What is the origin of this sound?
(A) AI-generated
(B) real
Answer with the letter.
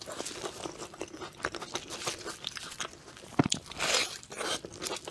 B